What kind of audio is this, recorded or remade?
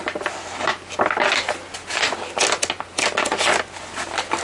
recorded